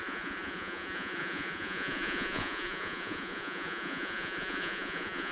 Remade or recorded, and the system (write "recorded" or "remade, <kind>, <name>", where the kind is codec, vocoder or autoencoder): remade, vocoder, Vocos